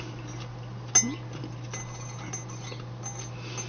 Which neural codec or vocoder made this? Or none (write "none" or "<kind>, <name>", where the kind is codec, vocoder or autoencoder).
none